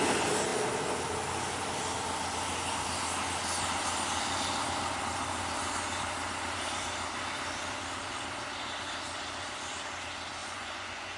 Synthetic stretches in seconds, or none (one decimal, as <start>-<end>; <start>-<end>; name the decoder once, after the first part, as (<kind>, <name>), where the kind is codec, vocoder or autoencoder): 10.4-11.2 (vocoder, Vocos)